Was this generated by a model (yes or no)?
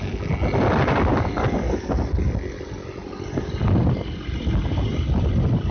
no